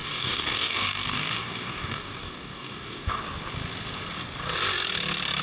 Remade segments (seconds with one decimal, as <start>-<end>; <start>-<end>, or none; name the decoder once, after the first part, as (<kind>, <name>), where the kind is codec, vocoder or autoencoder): 0.0-3.2 (codec, DAC)